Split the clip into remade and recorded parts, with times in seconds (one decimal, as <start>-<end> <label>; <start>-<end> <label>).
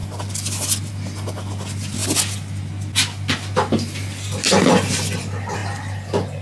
0.0-6.4 recorded